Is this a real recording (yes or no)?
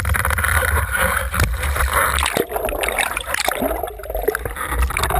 no